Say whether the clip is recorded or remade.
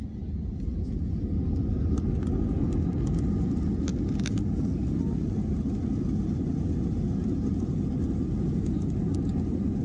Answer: recorded